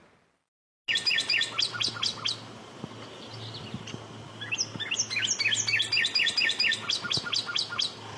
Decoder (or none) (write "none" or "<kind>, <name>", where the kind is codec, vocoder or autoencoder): none